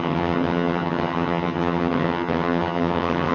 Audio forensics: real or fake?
fake